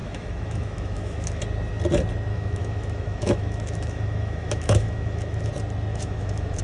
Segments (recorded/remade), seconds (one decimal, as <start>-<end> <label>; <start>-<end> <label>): 0.0-1.4 remade; 1.4-2.3 recorded; 2.3-5.5 remade; 5.5-5.9 recorded; 5.9-6.6 remade